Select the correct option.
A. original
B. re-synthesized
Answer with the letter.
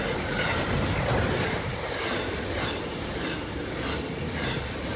A